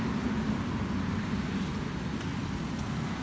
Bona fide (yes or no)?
yes